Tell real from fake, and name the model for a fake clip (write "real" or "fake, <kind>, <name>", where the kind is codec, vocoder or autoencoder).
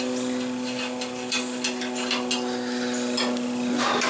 real